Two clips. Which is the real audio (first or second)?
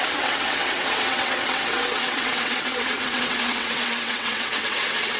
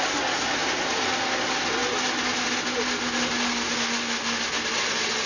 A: second